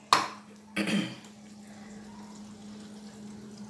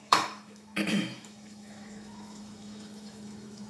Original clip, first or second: first